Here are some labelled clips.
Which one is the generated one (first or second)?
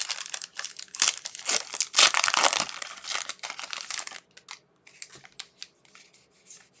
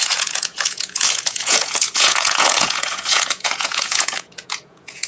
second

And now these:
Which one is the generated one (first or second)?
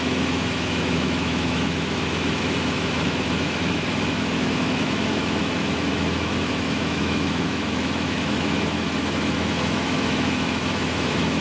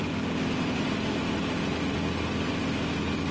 first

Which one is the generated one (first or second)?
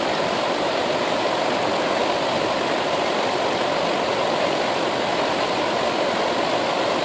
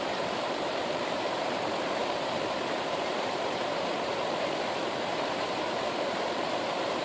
second